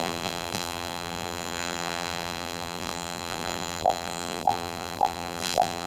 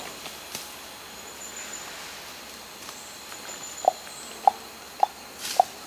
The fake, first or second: first